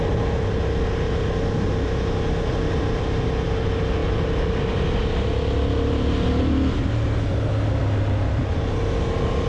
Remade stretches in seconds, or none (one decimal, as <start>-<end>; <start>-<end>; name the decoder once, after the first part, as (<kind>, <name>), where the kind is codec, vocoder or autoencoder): none